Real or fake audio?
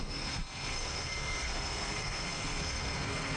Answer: fake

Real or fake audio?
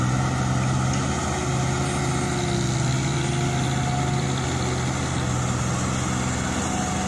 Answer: real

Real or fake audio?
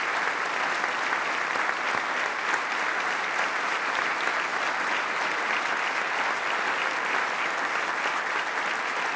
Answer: real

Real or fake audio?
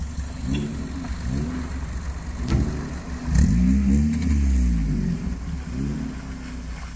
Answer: real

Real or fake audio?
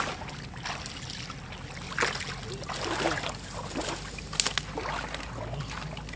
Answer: real